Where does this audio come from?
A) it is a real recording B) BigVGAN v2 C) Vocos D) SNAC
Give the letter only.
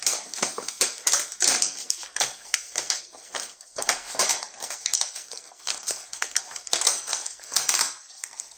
D